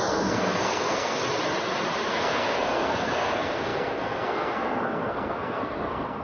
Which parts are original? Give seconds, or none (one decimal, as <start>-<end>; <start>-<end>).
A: 1.2-2.1